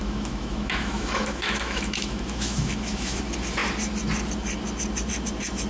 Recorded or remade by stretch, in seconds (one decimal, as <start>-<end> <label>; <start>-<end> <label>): 0.0-3.2 remade; 3.2-5.7 recorded